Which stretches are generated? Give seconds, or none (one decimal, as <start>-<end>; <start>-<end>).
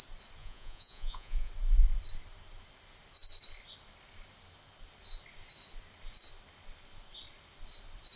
0.4-1.5